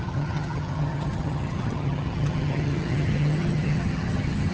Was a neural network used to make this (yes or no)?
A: yes